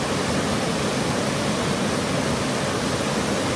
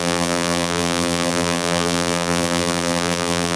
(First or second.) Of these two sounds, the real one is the first